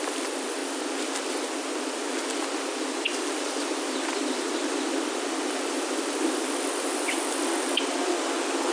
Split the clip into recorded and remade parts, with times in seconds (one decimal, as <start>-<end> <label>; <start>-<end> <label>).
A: 0.0-8.7 remade